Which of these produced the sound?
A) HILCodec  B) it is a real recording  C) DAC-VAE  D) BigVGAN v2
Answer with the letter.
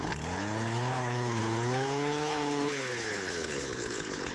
A